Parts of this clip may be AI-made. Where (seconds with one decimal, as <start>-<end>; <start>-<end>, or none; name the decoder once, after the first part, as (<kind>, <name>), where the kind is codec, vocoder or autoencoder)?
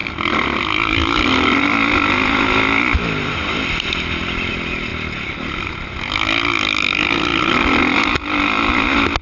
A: 0.0-4.5 (vocoder, BigVGAN v2); 4.9-5.7; 7.3-7.8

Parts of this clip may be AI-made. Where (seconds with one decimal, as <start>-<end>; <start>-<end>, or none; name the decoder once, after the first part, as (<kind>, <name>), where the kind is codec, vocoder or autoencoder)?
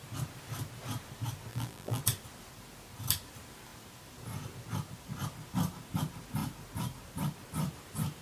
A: 1.5-2.0 (vocoder, BigVGAN v2)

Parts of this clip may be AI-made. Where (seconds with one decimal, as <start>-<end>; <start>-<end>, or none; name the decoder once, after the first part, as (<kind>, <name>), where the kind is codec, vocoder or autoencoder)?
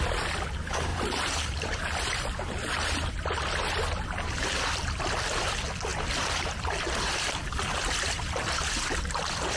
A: 0.9-3.1 (vocoder, BigVGAN v2)